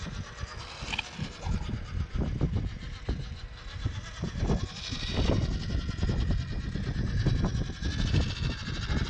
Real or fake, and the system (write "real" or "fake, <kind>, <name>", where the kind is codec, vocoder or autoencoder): real